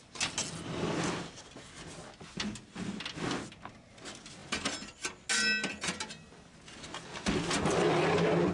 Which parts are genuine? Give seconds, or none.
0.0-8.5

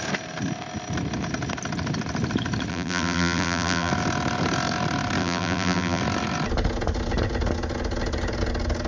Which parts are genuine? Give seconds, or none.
0.0-2.7; 3.9-5.2; 6.0-8.9

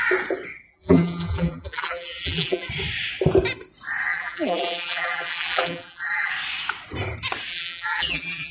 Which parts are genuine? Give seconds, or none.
0.0-0.7; 2.7-4.1; 6.3-7.5

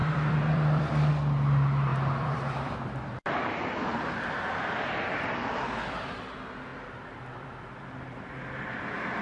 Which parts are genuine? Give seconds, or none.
1.1-1.9; 3.4-6.7; 8.4-9.2